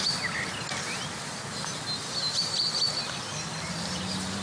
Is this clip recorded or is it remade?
recorded